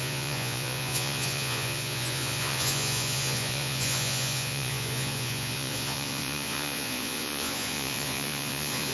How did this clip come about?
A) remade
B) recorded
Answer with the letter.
A